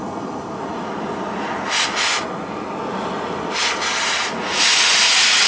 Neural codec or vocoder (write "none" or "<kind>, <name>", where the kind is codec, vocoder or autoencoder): none